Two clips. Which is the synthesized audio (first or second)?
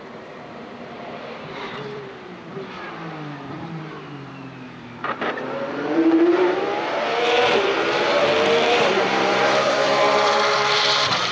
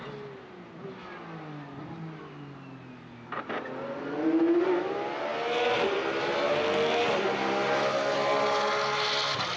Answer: first